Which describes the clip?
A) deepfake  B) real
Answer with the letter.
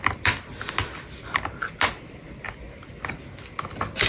B